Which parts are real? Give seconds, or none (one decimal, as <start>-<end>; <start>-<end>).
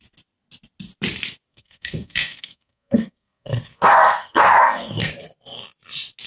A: 0.0-1.5; 5.1-6.3